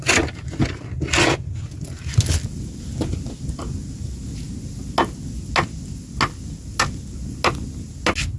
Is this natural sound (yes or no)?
yes